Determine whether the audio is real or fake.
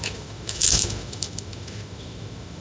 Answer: fake